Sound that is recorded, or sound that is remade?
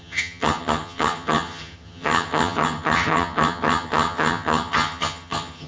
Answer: remade